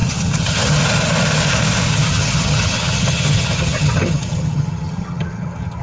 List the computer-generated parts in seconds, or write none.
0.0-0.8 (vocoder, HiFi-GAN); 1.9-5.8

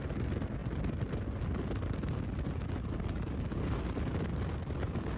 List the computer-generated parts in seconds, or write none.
none

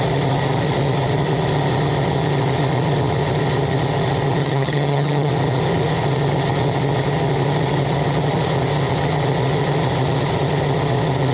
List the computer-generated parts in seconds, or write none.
4.4-5.3 (vocoder, HiFi-GAN)

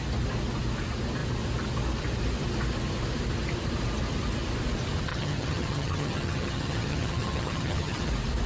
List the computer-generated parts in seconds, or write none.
5.1-8.1 (vocoder, HiFi-GAN)

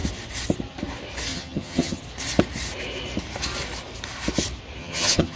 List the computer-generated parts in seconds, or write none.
1.3-2.0 (vocoder, HiFi-GAN); 4.8-5.4

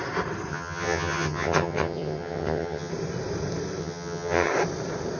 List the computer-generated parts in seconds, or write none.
0.5-2.9 (vocoder, HiFi-GAN); 3.8-4.5